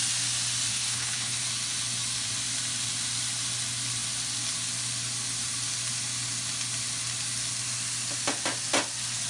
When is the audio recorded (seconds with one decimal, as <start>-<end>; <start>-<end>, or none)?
0.0-0.7; 1.4-9.3